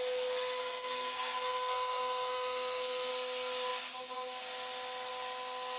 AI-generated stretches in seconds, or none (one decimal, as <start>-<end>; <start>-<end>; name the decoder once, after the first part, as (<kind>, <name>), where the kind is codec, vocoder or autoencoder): 0.6-3.1 (codec, SNAC)

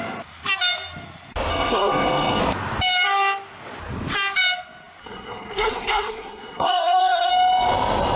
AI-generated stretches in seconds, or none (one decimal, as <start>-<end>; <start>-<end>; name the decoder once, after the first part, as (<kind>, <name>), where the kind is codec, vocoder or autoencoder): 1.5-2.4 (codec, SNAC); 5.0-7.3

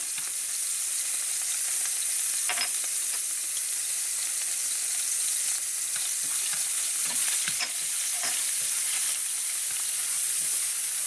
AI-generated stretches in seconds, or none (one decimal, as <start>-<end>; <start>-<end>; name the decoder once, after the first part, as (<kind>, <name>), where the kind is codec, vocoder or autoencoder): 7.0-7.7 (vocoder, Vocos); 10.0-10.6

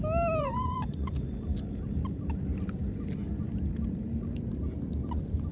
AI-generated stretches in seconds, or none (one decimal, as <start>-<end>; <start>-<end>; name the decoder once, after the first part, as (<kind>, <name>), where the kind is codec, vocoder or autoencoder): 0.4-1.1 (vocoder, Vocos)